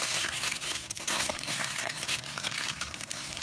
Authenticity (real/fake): fake